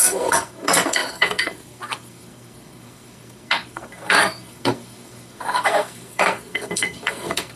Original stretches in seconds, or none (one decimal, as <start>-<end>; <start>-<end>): none